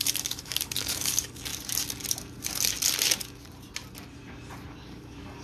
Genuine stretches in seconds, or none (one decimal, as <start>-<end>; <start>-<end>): 1.5-4.7